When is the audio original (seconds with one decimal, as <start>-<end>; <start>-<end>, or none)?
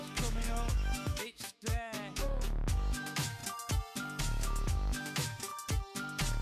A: 3.4-4.2; 5.5-6.4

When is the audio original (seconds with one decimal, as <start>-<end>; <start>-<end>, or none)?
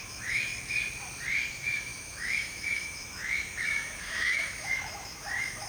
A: 0.5-1.5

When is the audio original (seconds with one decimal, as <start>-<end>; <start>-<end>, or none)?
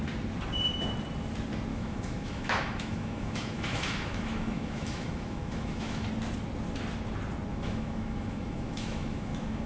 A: 0.0-1.7; 6.1-7.5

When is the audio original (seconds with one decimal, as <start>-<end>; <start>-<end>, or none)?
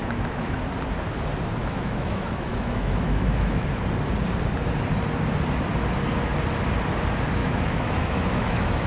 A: 0.6-1.6; 3.6-7.4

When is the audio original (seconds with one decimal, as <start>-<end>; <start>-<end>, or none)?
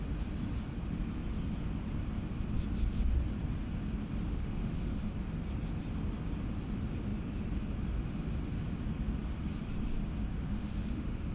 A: 0.0-4.3; 5.2-10.3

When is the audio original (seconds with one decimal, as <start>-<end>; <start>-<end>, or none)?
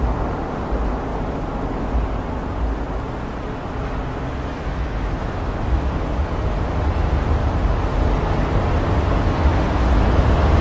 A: 0.0-4.5; 5.9-10.6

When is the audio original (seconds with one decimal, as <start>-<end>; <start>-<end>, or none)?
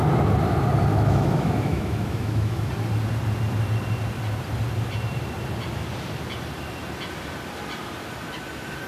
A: 0.0-0.9; 2.7-8.9